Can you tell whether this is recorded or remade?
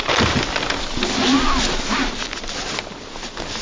recorded